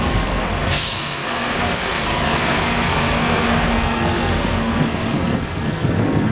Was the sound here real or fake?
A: fake